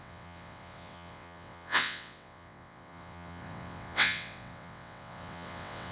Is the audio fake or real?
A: fake